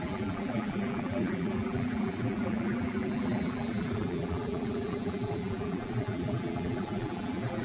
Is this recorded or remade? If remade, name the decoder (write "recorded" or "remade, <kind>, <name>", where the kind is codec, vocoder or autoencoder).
remade, vocoder, BigVGAN v2